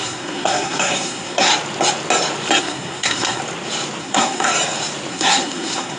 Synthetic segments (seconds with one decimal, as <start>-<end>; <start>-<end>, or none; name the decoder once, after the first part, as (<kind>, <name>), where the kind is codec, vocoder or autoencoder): 0.0-1.5 (codec, SNAC); 2.6-3.4; 4.0-4.5; 5.1-6.0